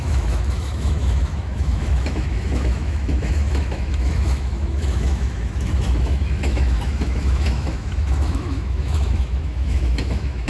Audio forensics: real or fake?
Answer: fake